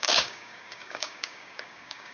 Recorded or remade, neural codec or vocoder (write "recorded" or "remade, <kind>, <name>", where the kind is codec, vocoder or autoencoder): remade, codec, DAC